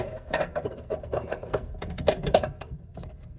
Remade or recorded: remade